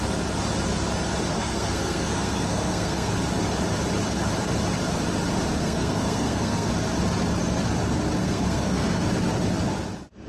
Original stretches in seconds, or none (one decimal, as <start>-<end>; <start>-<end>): 0.0-1.3; 3.1-5.6; 6.7-8.2; 9.0-10.3